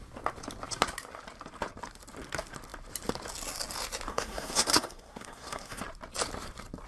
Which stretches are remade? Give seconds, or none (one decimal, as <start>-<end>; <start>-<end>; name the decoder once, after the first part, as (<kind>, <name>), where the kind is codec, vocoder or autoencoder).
4.1-5.8 (codec, SNAC)

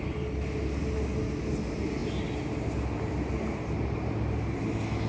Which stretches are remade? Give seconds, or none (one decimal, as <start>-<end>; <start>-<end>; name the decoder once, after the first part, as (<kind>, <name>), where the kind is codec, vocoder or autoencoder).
none

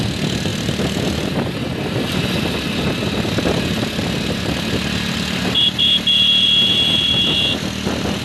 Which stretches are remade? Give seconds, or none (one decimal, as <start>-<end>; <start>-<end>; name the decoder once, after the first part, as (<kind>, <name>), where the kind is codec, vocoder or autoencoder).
none

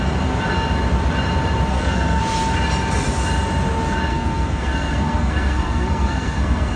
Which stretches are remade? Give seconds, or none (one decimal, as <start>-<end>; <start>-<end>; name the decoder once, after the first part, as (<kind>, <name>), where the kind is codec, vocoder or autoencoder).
1.7-2.2 (codec, SNAC); 4.1-6.8